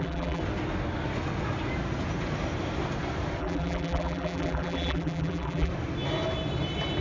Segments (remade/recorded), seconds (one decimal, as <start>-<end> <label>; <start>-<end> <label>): 0.0-0.4 remade; 0.4-3.4 recorded; 3.4-5.7 remade; 5.7-7.0 recorded